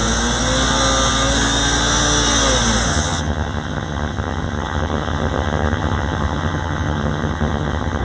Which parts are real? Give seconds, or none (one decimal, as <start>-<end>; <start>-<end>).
0.0-2.9